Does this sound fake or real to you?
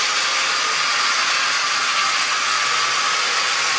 real